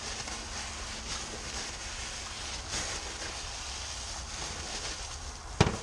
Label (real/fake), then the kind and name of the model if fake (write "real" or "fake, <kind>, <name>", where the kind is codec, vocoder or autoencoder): real